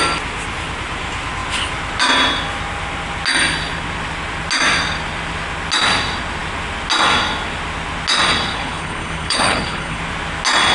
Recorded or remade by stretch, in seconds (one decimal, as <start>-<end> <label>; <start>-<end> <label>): 0.0-8.5 recorded; 8.5-10.0 remade; 10.0-10.7 recorded